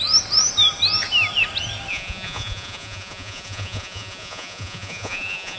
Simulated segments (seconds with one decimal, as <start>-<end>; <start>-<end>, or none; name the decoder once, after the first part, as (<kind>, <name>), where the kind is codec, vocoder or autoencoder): 1.9-5.6 (vocoder, Vocos)